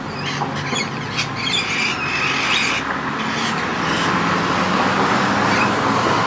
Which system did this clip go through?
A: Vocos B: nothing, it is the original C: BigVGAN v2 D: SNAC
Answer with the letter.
B